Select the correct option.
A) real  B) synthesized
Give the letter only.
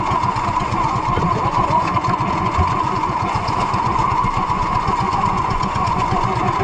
B